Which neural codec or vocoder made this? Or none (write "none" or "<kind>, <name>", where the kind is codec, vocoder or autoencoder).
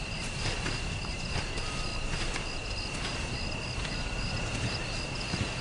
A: none